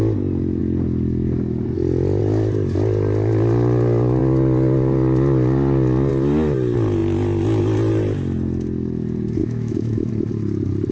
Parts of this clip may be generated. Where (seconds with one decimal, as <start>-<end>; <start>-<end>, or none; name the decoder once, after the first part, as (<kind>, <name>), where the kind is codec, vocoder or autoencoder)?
9.4-10.1 (autoencoder, DAC-VAE)